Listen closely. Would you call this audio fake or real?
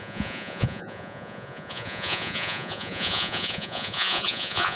fake